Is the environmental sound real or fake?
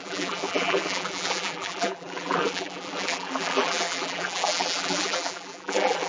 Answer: fake